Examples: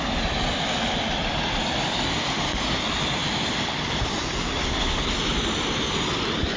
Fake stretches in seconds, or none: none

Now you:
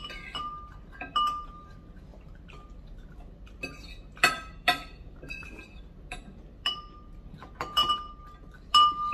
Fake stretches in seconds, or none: none

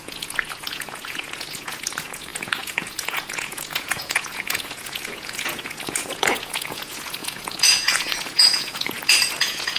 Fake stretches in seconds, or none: 0.0-9.8